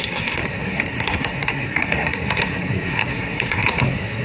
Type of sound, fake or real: fake